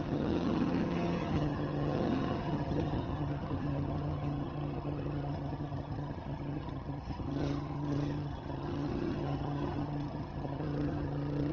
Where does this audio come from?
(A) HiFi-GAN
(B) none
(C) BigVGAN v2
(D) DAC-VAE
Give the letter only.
A